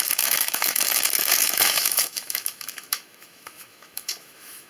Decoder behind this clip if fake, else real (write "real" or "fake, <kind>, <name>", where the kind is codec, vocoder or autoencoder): fake, autoencoder, DAC-VAE